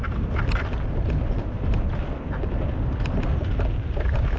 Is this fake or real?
real